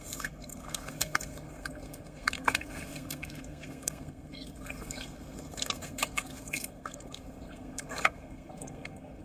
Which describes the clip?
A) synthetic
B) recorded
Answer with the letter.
A